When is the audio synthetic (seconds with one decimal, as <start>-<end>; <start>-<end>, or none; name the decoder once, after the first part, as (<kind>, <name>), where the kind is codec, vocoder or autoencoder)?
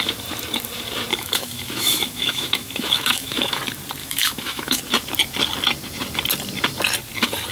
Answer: 1.1-3.6 (autoencoder, DAC-VAE); 4.0-4.8